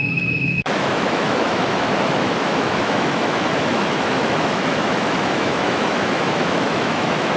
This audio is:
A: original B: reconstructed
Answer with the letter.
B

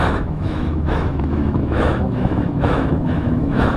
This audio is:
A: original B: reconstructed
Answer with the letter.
B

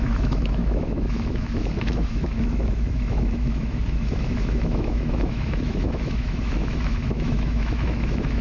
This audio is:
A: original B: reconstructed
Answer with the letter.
B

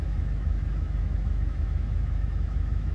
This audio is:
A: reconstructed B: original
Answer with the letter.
A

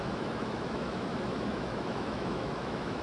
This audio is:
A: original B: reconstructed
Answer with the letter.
B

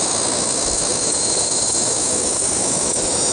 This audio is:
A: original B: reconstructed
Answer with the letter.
B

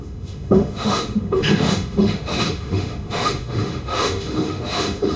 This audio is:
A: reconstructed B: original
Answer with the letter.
A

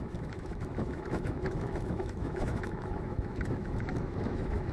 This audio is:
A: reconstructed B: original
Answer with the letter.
A